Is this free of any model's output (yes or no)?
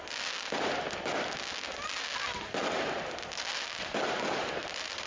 yes